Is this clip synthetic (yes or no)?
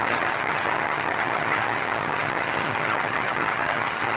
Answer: yes